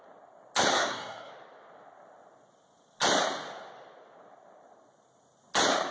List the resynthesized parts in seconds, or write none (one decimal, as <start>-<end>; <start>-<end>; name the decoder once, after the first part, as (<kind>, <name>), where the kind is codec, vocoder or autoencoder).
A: 0.7-1.3 (codec, SNAC)